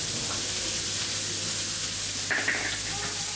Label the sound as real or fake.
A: real